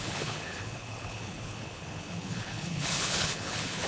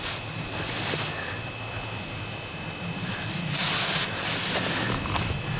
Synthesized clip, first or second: first